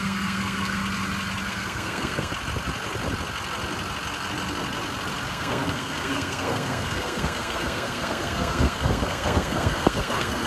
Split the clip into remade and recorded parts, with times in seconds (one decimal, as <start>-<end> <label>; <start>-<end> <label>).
0.0-0.8 remade; 0.8-1.5 recorded; 1.5-2.3 remade; 2.3-5.3 recorded; 5.3-10.5 remade